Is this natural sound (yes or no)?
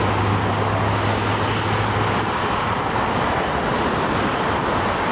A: yes